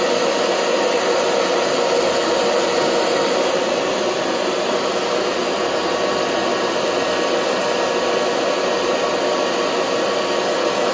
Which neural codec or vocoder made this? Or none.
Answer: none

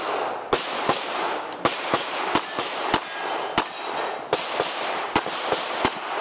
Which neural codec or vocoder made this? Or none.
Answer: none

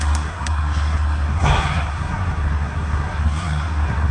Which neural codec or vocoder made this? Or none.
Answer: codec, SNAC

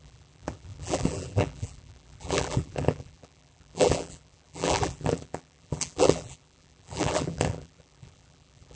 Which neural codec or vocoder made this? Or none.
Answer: vocoder, BigVGAN v2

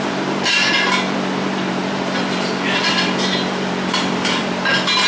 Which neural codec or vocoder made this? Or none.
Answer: vocoder, BigVGAN v2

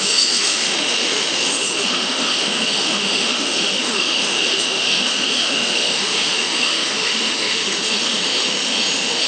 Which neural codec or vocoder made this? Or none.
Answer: autoencoder, DAC-VAE